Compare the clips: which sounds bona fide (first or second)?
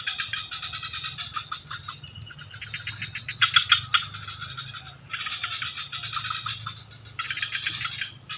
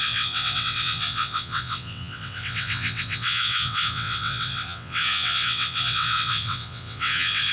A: first